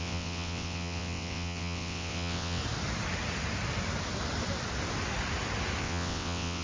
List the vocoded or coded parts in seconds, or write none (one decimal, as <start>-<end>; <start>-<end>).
0.0-2.6; 5.8-6.6